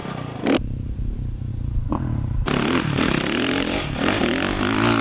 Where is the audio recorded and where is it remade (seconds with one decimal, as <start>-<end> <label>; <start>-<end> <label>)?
0.0-1.0 remade; 1.0-1.5 recorded; 1.5-4.2 remade; 4.2-5.0 recorded